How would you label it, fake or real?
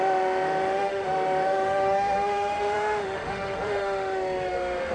fake